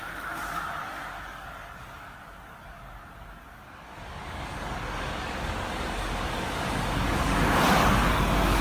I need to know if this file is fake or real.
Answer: fake